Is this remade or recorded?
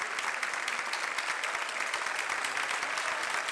recorded